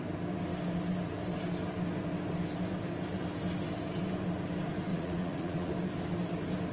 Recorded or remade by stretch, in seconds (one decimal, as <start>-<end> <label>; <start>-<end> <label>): 0.0-4.9 recorded; 4.9-5.7 remade; 5.7-6.7 recorded

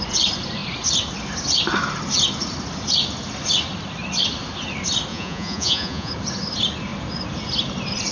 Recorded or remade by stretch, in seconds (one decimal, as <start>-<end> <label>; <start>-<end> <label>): 0.0-5.1 recorded; 5.1-6.1 remade; 6.1-8.1 recorded

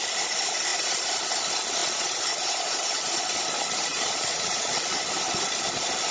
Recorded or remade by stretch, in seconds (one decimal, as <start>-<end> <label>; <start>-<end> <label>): 0.0-1.8 recorded; 1.8-3.4 remade; 3.4-3.9 recorded; 3.9-4.7 remade; 4.7-6.1 recorded

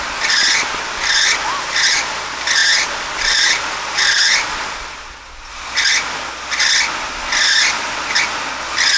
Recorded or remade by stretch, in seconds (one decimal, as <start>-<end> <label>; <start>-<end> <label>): 0.0-9.0 recorded

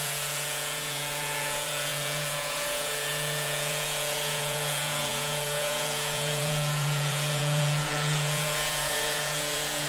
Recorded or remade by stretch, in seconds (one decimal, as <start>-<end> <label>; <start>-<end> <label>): 0.0-9.9 remade

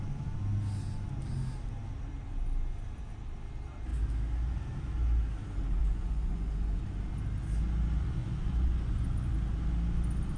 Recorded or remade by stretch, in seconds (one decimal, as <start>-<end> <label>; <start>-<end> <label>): 0.0-5.8 recorded; 5.8-6.8 remade; 6.8-8.2 recorded; 8.2-9.3 remade; 9.3-10.4 recorded